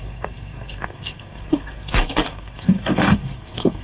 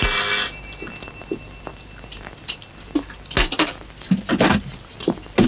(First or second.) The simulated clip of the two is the first